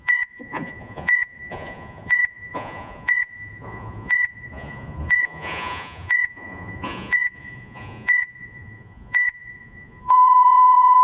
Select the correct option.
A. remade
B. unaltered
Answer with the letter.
A